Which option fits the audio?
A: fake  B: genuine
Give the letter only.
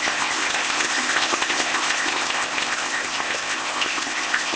A